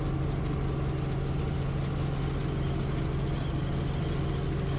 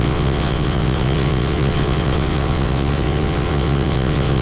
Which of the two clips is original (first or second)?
first